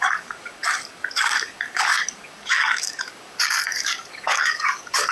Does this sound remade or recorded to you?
remade